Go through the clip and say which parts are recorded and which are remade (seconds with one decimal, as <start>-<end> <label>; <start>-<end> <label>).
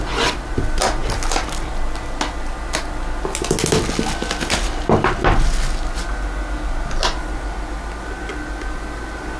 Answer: 0.0-9.4 recorded